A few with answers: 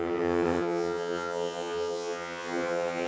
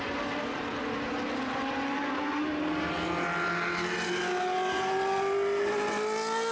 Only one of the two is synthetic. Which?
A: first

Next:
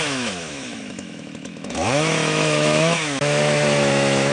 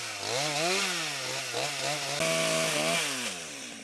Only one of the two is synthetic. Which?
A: first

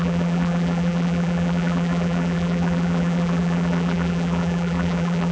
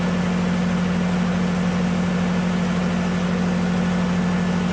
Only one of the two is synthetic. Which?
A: first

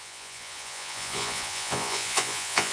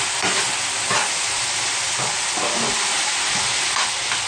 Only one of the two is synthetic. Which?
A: first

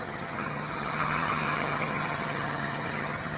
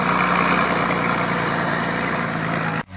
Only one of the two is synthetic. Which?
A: first